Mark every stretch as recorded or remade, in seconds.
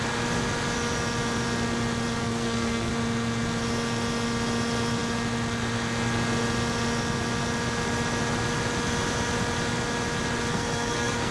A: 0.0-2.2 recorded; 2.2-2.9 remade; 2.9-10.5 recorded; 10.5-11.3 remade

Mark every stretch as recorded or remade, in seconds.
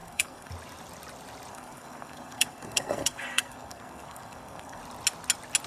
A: 0.0-0.5 remade; 0.5-1.5 recorded; 1.5-4.8 remade; 4.8-5.7 recorded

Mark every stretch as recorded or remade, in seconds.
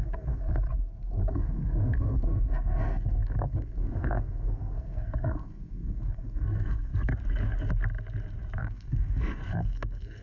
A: 0.0-0.4 remade; 0.4-1.3 recorded; 1.3-6.9 remade; 6.9-8.6 recorded; 8.6-10.2 remade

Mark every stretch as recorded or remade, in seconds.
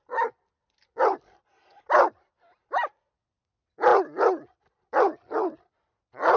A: 0.0-6.4 recorded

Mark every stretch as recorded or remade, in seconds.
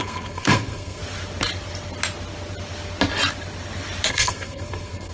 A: 0.0-1.0 remade; 1.0-4.1 recorded; 4.1-5.1 remade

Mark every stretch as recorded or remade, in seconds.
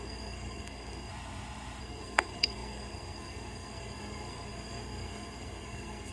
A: 0.0-1.1 remade; 1.1-1.8 recorded; 1.8-6.1 remade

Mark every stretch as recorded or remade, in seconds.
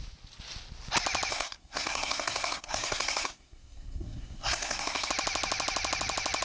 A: 0.0-1.3 recorded; 1.3-5.1 remade; 5.1-6.4 recorded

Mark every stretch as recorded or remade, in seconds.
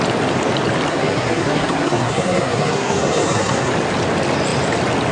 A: 0.0-0.9 recorded; 0.9-3.7 remade; 3.7-5.1 recorded